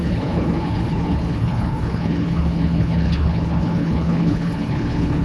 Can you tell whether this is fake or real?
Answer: fake